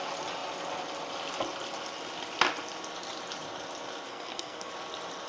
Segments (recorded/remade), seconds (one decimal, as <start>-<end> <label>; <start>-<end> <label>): 0.0-4.1 recorded; 4.1-4.7 remade; 4.7-5.3 recorded